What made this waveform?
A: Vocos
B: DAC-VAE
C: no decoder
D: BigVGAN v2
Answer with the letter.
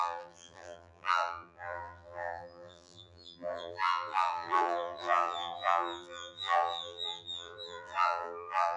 D